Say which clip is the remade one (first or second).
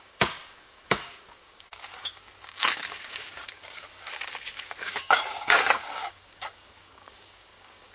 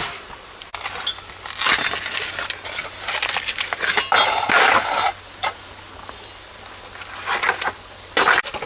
first